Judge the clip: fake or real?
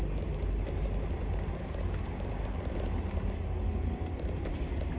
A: real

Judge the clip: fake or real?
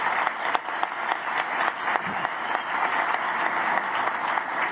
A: fake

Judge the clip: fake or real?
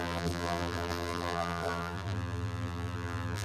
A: fake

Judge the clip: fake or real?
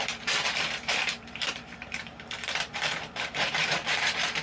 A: fake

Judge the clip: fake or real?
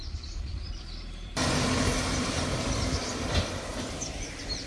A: fake